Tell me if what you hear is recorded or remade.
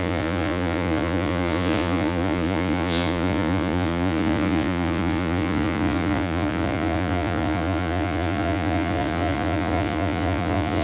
remade